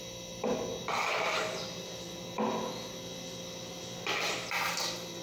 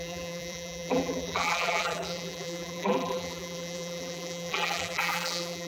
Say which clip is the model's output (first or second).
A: second